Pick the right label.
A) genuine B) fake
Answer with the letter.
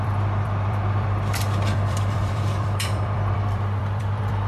B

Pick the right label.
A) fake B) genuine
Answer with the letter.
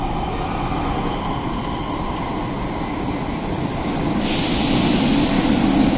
B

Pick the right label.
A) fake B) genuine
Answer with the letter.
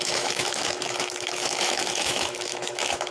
A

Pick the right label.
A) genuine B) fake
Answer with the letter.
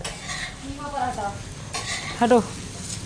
A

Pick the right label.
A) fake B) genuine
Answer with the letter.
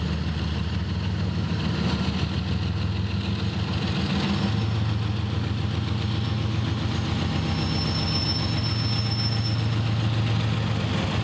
B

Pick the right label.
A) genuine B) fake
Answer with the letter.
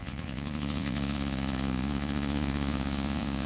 B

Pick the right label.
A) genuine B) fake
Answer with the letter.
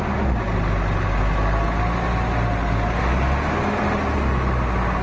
A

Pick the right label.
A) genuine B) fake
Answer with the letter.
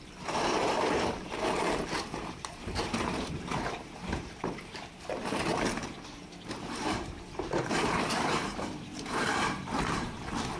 B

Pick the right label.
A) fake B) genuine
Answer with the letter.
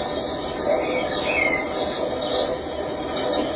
B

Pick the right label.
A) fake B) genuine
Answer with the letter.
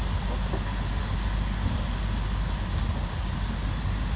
B